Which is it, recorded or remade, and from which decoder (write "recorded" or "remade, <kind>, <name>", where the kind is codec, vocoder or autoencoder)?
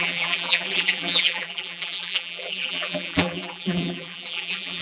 remade, vocoder, BigVGAN v2